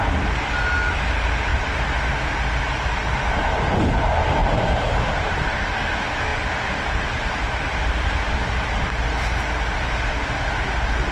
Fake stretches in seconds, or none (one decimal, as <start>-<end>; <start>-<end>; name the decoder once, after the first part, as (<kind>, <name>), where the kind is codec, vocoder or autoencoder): 1.5-2.2 (vocoder, BigVGAN v2); 4.4-5.3; 6.3-8.5